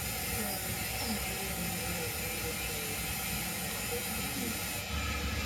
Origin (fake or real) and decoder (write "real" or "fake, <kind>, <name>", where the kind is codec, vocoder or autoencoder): real